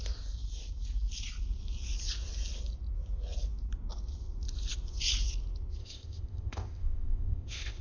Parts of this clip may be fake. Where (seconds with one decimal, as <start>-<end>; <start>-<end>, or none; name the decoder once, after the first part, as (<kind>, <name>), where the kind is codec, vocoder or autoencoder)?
5.8-7.8 (codec, ZipCodec)